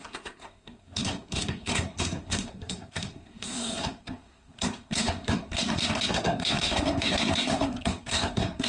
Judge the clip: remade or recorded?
remade